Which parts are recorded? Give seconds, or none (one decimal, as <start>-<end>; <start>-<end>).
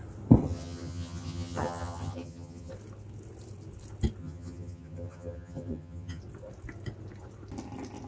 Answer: 0.0-0.4; 2.7-4.2; 6.2-8.1